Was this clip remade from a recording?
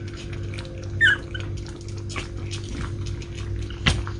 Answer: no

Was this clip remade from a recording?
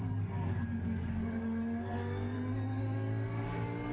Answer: yes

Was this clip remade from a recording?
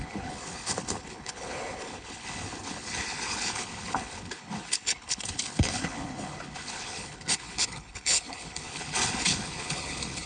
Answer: yes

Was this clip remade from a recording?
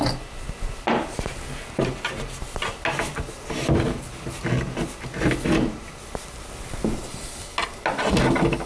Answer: no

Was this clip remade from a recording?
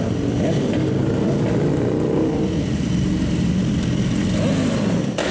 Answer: no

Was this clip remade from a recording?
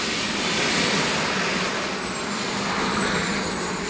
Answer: no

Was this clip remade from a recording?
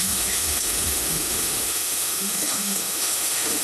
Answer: yes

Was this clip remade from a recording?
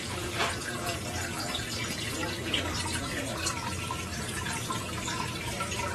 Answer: no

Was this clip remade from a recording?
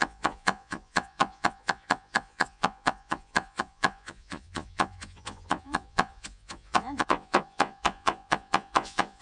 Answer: yes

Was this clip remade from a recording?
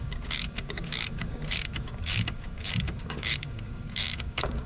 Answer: yes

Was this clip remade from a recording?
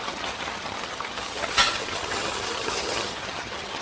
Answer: yes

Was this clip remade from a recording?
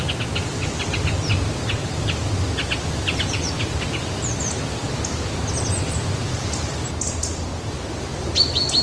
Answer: no